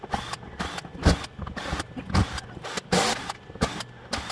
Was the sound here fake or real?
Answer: real